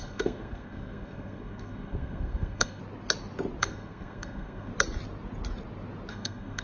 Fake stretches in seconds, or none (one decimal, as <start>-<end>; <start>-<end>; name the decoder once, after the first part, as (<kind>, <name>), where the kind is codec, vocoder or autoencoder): 0.0-2.8 (codec, SNAC); 3.6-4.7; 6.1-6.6

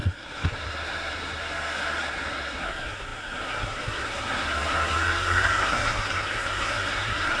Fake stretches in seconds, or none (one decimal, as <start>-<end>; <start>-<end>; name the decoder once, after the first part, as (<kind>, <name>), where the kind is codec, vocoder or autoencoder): 0.0-7.4 (codec, SNAC)